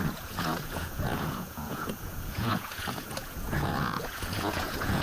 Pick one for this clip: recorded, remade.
remade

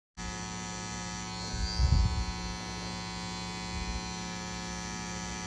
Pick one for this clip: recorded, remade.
recorded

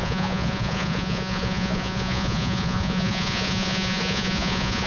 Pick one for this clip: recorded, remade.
remade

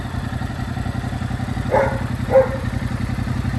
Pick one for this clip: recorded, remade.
recorded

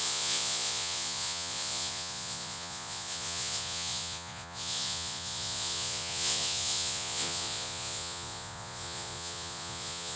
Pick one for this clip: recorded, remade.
remade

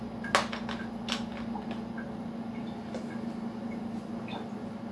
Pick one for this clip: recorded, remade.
recorded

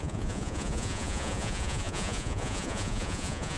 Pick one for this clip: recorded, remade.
remade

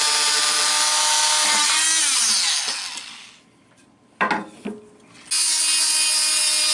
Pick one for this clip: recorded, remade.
recorded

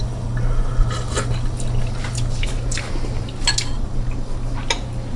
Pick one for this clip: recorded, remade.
recorded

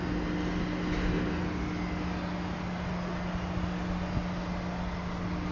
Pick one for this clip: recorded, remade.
recorded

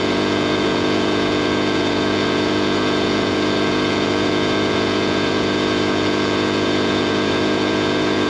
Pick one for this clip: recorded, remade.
remade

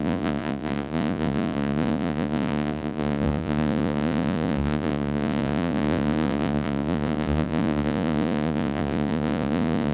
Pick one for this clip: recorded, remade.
remade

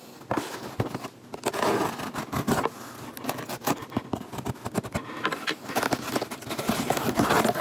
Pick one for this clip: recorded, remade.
recorded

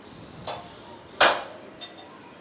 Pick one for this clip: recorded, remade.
recorded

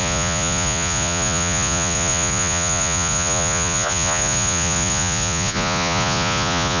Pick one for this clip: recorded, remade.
remade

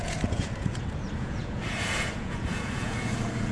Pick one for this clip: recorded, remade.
remade